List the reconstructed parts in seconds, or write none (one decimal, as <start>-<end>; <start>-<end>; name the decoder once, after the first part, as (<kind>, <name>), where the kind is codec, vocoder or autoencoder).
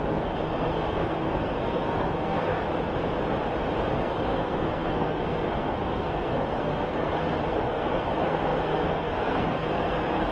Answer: 0.0-2.5 (codec, SNAC); 3.9-10.3